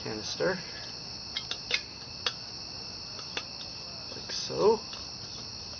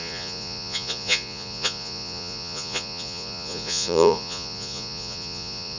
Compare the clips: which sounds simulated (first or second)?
second